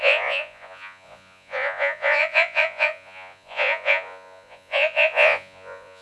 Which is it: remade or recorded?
remade